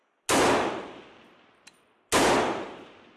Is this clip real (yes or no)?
yes